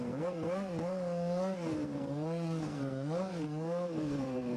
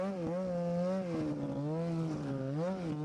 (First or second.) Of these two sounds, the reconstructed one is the first